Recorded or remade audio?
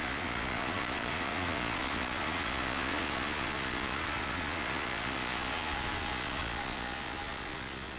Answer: remade